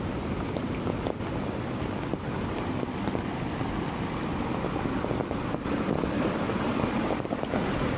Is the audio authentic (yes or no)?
yes